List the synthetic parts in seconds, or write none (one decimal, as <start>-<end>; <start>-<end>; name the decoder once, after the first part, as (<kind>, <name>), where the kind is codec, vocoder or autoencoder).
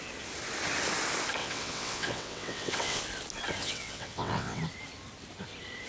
1.4-3.0 (vocoder, WaveNeXt); 3.6-4.6